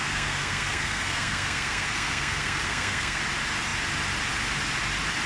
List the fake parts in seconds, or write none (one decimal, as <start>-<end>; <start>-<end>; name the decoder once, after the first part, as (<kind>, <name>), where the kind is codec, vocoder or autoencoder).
0.0-3.2 (codec, SNAC)